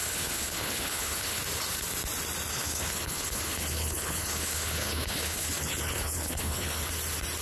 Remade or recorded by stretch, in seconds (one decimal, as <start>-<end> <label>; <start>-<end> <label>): 0.0-1.4 remade; 1.4-2.5 recorded; 2.5-6.9 remade; 6.9-7.4 recorded